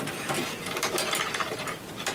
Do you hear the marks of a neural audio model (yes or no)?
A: no